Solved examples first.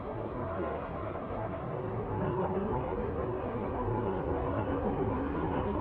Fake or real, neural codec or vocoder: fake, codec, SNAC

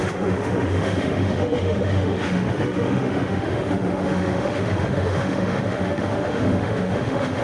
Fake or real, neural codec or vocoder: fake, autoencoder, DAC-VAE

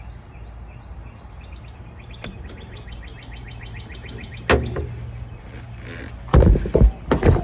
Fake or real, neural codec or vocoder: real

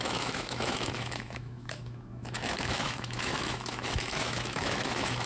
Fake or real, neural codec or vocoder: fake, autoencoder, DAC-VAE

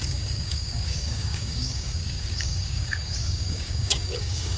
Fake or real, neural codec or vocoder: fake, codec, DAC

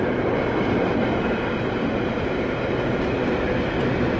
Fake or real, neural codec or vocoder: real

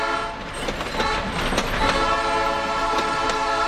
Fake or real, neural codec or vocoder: real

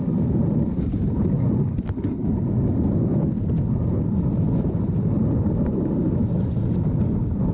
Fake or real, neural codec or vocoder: real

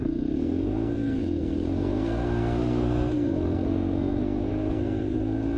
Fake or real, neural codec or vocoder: fake, codec, SNAC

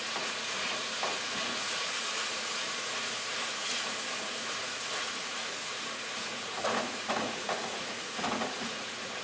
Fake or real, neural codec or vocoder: fake, vocoder, Vocos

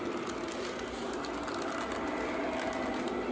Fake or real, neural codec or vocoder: real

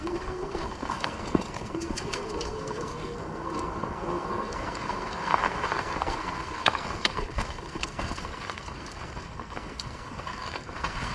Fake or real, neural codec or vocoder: fake, codec, SNAC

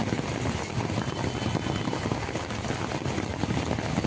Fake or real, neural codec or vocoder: real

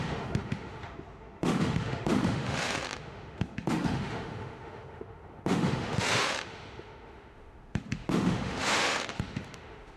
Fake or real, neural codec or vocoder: fake, autoencoder, DAC-VAE